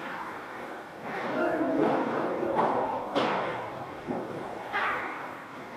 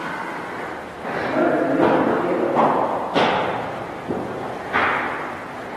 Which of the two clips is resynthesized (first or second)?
first